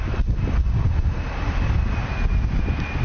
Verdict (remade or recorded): recorded